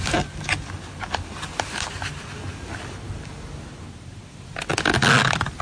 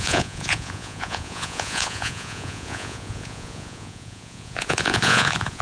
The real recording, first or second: first